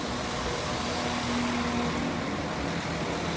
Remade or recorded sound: recorded